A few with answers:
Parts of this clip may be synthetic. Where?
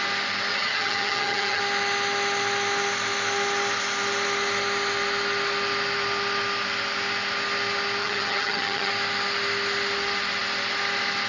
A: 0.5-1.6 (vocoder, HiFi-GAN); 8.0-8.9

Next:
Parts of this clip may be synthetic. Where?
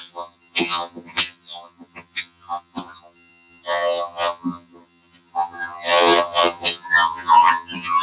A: 0.0-8.0 (vocoder, HiFi-GAN)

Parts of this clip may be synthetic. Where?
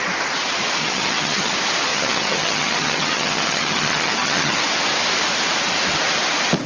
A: 0.8-1.5 (vocoder, HiFi-GAN); 1.9-4.6